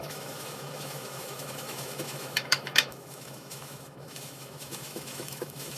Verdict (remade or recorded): remade